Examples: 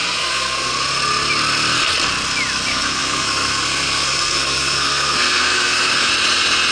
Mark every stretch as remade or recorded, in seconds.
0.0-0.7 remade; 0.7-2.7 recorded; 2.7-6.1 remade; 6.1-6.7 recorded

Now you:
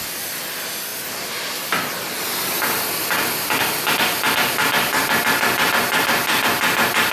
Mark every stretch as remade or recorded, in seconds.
0.0-7.1 recorded

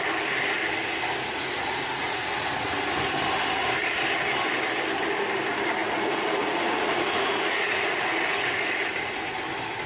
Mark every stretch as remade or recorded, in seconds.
0.0-1.3 recorded; 1.3-3.0 remade; 3.0-5.8 recorded; 5.8-9.4 remade; 9.4-9.9 recorded

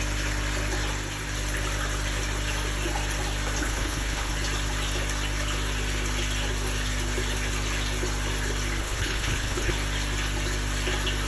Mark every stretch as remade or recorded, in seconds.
0.0-3.6 recorded; 3.6-4.3 remade; 4.3-8.8 recorded; 8.8-9.7 remade; 9.7-11.3 recorded

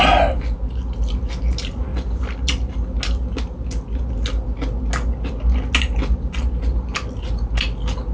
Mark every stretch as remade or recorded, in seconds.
0.0-8.1 recorded